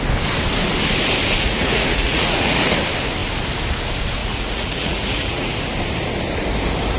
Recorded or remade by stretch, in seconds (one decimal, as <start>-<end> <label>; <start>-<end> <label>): 0.0-1.4 recorded; 1.4-2.6 remade; 2.6-4.2 recorded; 4.2-5.5 remade; 5.5-7.0 recorded